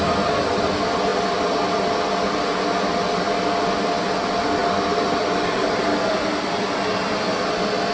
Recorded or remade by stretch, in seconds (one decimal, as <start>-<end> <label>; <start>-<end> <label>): 0.0-7.9 recorded